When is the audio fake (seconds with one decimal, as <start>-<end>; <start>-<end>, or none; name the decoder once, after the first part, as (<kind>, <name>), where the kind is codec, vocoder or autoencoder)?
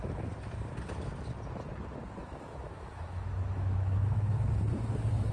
2.2-4.6 (autoencoder, DAC-VAE)